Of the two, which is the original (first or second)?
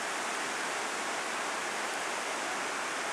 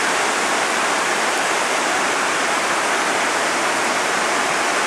first